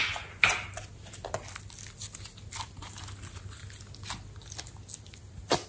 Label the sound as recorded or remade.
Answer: recorded